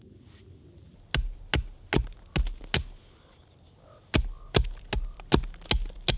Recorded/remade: recorded